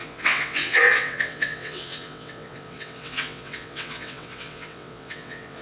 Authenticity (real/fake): fake